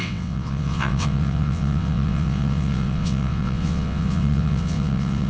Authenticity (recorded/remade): remade